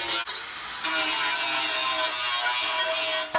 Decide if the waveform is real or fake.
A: real